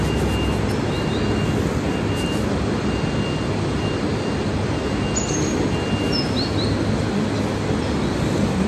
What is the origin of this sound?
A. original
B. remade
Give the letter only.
A